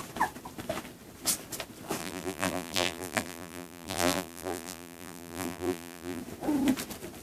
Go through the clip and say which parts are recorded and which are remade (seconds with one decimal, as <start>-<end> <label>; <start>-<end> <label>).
0.0-2.0 recorded; 2.0-6.2 remade; 6.2-7.2 recorded